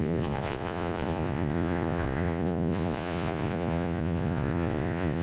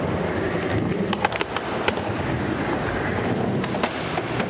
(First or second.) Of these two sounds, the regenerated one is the first